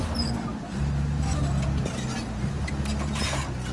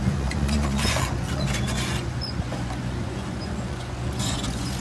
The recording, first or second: first